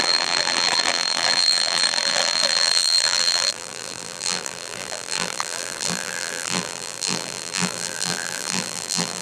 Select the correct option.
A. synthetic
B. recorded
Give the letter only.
A